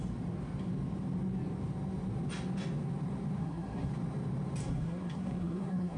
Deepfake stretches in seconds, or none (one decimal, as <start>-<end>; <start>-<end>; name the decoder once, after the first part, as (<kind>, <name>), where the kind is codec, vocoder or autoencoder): 3.4-3.9 (codec, SNAC); 4.6-6.0

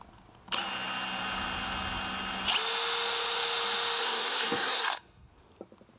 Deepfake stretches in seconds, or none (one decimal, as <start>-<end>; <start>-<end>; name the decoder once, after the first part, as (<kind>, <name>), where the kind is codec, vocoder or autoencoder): 4.0-5.3 (codec, SNAC)

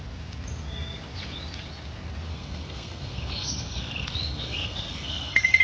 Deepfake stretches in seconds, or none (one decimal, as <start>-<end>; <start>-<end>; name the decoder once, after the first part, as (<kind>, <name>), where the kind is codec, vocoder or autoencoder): 2.3-5.6 (codec, SNAC)

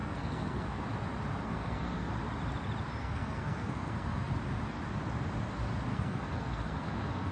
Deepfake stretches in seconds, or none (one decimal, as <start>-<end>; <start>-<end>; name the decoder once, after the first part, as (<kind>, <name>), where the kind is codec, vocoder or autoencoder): 0.0-0.8 (codec, SNAC); 1.4-2.1; 3.0-4.3; 5.9-7.3